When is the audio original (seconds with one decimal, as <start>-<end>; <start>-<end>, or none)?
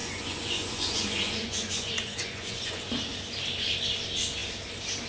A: 2.8-5.1